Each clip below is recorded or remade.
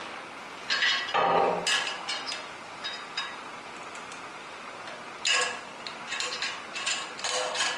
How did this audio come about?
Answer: recorded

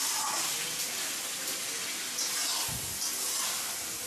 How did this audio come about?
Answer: recorded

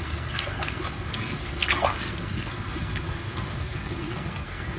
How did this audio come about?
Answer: remade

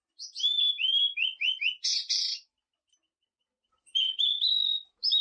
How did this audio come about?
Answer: recorded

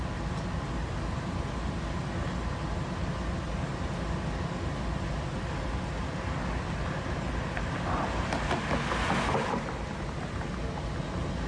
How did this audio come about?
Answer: recorded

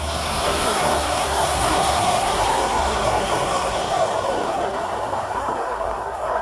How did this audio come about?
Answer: remade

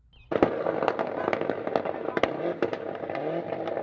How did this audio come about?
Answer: recorded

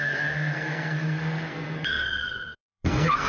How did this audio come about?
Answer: remade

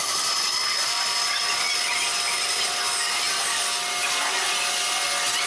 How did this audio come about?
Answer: recorded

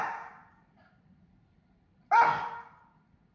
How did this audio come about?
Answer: recorded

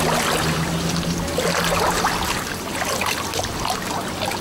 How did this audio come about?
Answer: recorded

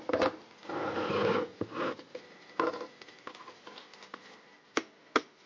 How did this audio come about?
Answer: recorded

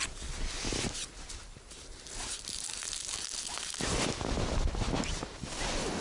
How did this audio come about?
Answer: recorded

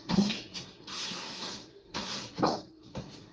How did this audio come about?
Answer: remade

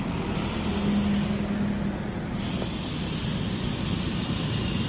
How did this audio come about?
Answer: recorded